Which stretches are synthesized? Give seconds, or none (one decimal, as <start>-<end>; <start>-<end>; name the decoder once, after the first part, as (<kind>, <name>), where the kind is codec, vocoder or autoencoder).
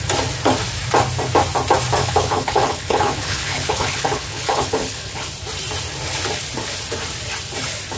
2.0-5.3 (codec, HILCodec)